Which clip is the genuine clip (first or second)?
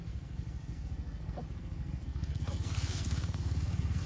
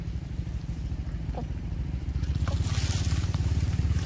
second